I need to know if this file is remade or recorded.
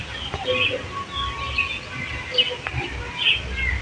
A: recorded